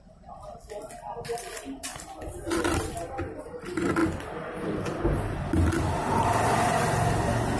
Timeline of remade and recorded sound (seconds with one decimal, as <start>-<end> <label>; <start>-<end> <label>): 0.0-7.6 recorded